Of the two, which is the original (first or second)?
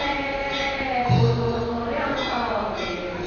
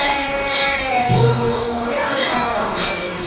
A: first